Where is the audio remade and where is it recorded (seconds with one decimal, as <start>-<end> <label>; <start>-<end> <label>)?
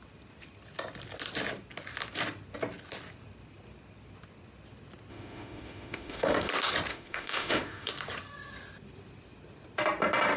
0.0-5.1 recorded; 5.1-6.5 remade; 6.5-6.9 recorded; 6.9-7.9 remade; 7.9-10.4 recorded